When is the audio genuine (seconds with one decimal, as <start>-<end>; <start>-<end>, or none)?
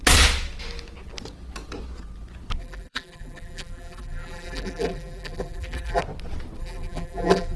0.0-2.6; 6.0-6.6